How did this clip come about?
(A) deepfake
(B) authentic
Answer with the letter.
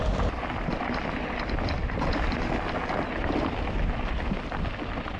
B